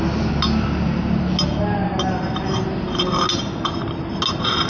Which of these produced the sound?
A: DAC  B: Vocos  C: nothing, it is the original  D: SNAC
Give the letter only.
C